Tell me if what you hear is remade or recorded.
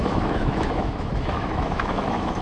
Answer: remade